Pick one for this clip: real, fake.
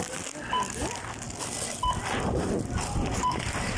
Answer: real